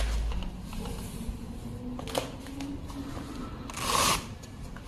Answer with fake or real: real